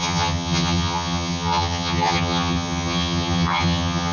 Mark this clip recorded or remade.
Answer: remade